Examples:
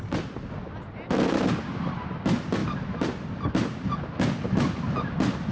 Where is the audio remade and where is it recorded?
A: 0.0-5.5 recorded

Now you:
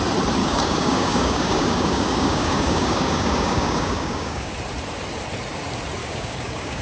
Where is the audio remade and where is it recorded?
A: 0.0-0.4 recorded; 0.4-4.5 remade; 4.5-6.0 recorded; 6.0-6.8 remade

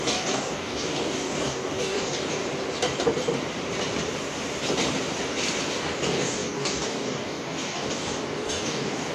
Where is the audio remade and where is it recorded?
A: 0.0-2.4 remade; 2.4-5.7 recorded; 5.7-9.1 remade

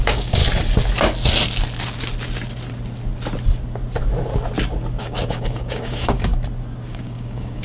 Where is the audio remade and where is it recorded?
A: 0.0-0.4 remade; 0.4-5.0 recorded; 5.0-6.3 remade; 6.3-6.9 recorded; 6.9-7.6 remade